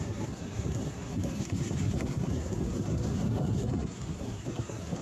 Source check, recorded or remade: remade